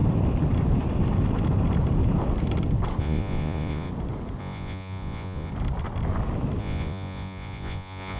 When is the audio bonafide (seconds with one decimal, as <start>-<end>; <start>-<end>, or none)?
0.0-3.0; 3.9-4.4; 5.5-6.6